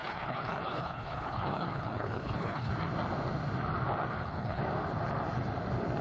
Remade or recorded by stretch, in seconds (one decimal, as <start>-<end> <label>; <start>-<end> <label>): 0.0-2.7 remade; 2.7-4.1 recorded; 4.1-4.6 remade; 4.6-6.0 recorded

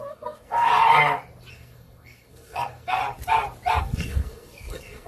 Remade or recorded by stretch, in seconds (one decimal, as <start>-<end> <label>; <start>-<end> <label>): 0.0-0.7 remade; 0.7-1.5 recorded; 1.5-3.0 remade; 3.0-3.8 recorded; 3.8-5.1 remade

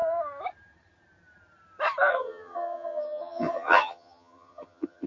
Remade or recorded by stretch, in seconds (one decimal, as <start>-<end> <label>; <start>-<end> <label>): 0.0-2.1 recorded; 2.1-5.1 remade

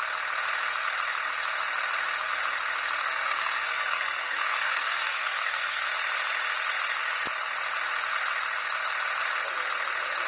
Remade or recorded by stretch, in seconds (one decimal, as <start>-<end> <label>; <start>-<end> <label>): 0.0-3.0 recorded; 3.0-5.9 remade; 5.9-10.3 recorded

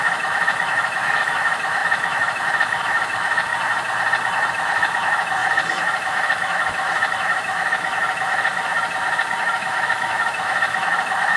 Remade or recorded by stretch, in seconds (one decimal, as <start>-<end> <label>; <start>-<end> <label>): 0.0-3.5 remade; 3.5-4.5 recorded; 4.5-8.7 remade; 8.7-9.4 recorded; 9.4-11.4 remade

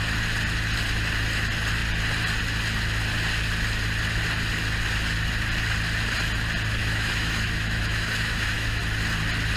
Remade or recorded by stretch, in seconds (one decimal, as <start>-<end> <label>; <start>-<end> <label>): 0.0-6.8 recorded; 6.8-8.8 remade; 8.8-9.6 recorded